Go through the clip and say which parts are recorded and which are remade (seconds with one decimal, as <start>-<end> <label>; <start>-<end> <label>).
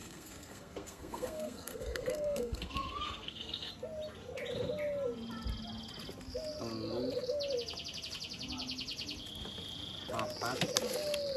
0.0-3.7 remade; 3.7-11.4 recorded